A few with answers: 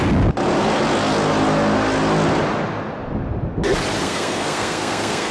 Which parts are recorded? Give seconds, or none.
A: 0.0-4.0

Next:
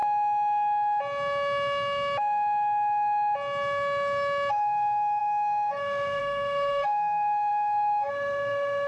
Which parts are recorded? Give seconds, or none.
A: 0.0-4.5